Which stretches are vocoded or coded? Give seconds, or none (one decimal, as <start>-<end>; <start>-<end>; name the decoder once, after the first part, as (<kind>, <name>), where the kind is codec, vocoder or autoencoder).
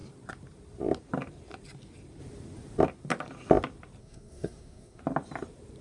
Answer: 4.0-5.0 (codec, SNAC)